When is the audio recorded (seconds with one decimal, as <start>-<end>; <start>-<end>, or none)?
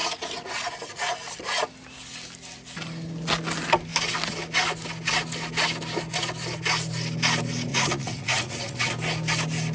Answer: 1.1-7.7; 8.9-9.7